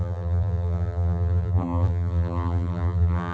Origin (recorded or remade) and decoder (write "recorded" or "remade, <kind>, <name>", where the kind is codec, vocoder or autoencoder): remade, vocoder, BigVGAN v2